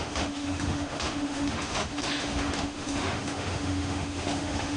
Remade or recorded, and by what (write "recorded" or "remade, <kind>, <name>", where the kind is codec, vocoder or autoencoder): remade, autoencoder, DAC-VAE